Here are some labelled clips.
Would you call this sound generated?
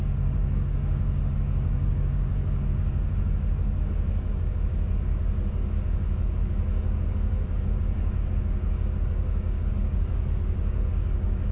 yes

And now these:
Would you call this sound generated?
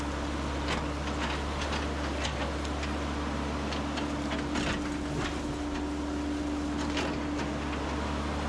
no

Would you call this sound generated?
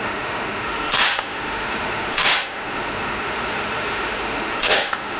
yes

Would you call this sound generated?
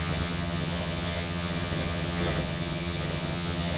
yes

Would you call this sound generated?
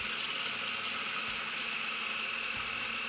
no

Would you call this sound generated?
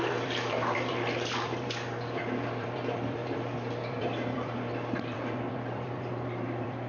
yes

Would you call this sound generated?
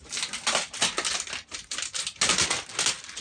no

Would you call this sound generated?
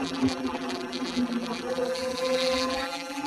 yes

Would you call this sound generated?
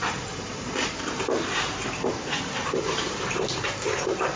yes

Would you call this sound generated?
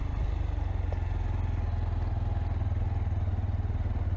no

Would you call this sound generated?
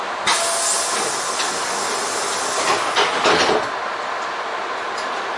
no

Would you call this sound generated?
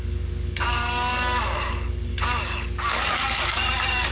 yes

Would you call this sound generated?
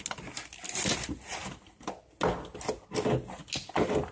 no